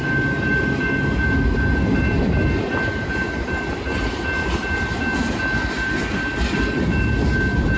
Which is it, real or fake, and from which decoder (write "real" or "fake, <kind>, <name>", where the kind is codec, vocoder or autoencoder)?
real